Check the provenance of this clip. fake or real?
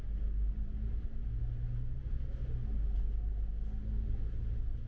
real